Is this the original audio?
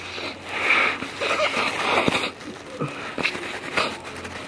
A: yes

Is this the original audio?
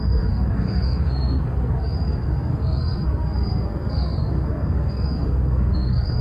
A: no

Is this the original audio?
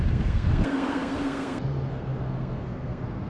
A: no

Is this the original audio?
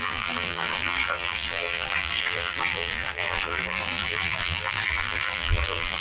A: no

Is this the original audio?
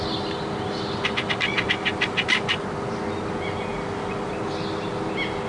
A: yes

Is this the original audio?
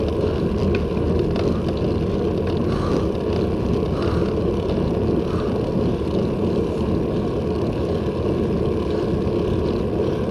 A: yes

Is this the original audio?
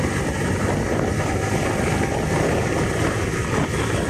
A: yes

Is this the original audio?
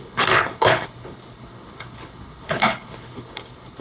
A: no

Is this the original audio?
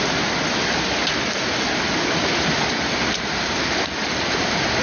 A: yes